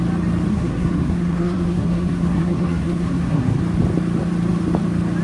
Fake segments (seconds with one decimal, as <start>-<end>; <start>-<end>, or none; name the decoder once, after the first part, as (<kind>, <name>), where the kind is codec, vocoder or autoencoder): 0.5-3.6 (codec, SNAC)